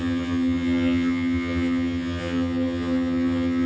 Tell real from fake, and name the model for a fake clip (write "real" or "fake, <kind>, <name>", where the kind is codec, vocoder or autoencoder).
fake, vocoder, HiFi-GAN